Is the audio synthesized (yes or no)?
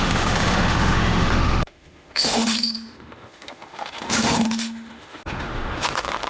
yes